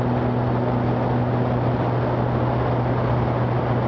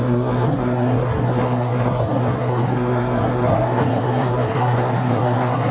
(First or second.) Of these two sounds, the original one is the first